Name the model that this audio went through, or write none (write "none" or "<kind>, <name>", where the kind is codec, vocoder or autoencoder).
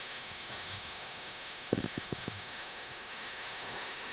autoencoder, DAC-VAE